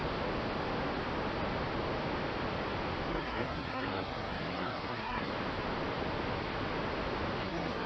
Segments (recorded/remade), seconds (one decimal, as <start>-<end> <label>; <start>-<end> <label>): 0.0-3.1 recorded; 3.1-5.3 remade; 5.3-7.4 recorded; 7.4-7.9 remade